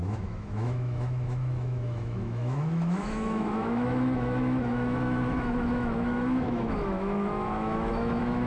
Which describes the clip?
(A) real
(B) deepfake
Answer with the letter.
B